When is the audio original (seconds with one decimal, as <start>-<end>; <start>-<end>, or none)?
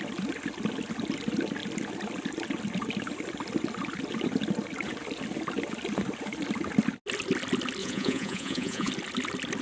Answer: 0.0-7.8; 8.9-9.6